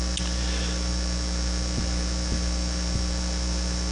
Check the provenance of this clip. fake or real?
real